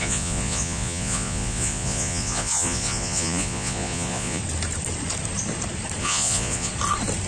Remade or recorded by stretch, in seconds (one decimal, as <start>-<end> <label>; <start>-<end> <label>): 0.0-4.4 remade; 4.4-6.0 recorded; 6.0-6.7 remade; 6.7-7.3 recorded